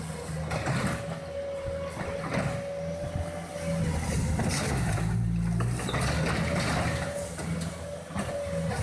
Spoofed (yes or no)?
no